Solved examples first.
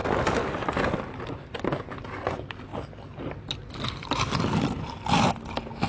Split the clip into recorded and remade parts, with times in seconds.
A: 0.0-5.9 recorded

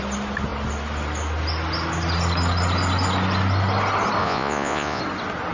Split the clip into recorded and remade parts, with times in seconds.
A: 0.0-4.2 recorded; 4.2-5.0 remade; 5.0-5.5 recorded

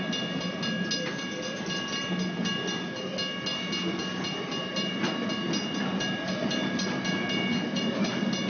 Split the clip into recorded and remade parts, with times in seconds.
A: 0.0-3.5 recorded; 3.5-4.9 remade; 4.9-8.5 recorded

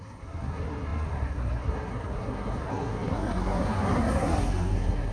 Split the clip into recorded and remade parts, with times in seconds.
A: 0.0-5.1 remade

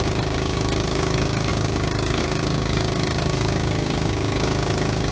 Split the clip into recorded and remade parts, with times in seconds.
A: 0.0-5.1 remade